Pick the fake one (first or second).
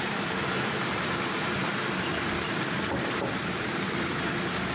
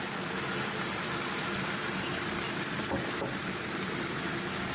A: first